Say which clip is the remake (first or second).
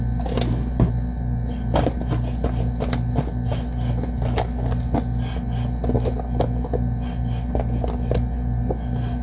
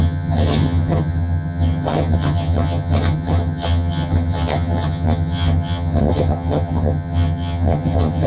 second